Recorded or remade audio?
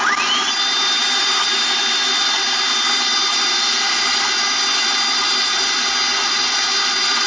recorded